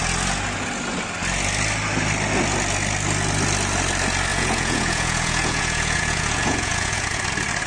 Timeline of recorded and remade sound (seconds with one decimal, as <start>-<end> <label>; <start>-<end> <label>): 0.0-4.3 recorded; 4.3-7.2 remade; 7.2-7.7 recorded